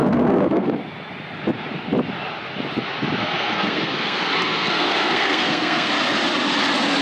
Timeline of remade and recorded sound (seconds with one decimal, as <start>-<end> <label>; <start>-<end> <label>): 0.0-0.8 remade; 0.8-3.2 recorded; 3.2-5.9 remade; 5.9-7.0 recorded